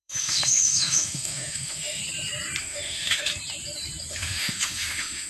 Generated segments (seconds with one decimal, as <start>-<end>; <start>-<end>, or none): 0.0-2.0; 2.6-3.3; 4.1-5.3